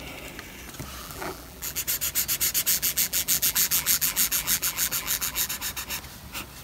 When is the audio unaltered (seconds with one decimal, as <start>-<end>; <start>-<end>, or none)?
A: 0.0-1.0; 1.8-2.7; 5.5-6.6